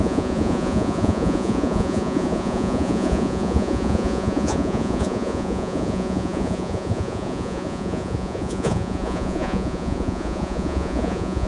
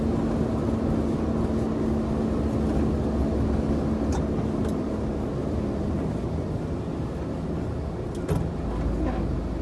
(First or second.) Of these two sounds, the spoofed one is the first